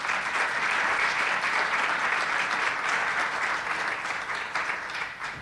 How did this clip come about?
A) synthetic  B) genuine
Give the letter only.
A